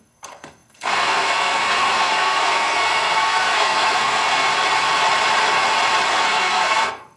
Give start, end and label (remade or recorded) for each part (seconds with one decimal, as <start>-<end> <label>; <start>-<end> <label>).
0.0-4.5 remade; 4.5-6.1 recorded; 6.1-7.2 remade